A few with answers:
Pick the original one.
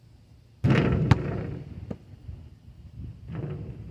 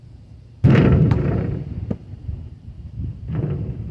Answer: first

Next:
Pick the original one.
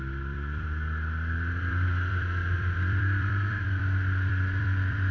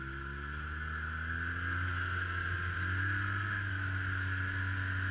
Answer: second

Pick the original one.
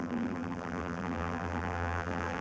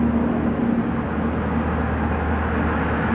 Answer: second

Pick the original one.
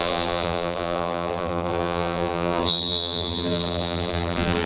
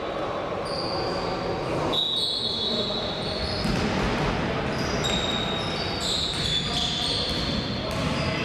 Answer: second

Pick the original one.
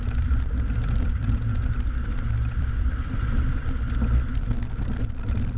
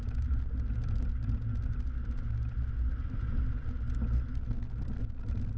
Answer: second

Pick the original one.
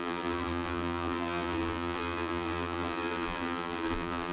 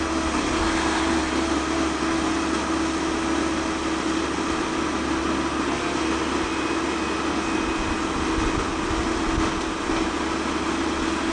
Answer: second